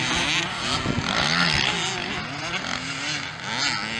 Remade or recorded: recorded